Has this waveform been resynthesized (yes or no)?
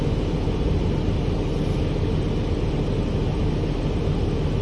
no